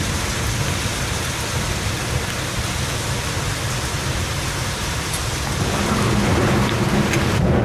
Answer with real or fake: real